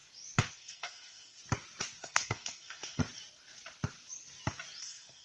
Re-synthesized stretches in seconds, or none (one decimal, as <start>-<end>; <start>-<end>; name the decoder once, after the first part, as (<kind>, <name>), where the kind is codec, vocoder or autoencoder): 0.5-1.4 (codec, SNAC); 2.0-3.0; 4.8-5.2